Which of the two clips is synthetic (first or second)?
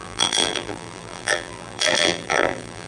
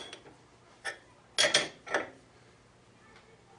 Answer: first